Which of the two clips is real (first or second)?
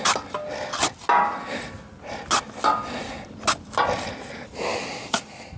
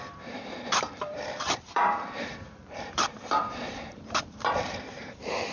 first